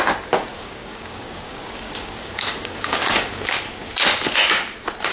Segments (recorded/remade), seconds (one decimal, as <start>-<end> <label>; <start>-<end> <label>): 0.0-0.5 recorded; 0.5-3.6 remade; 3.6-5.1 recorded